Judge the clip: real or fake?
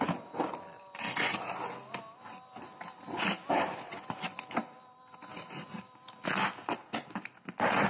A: real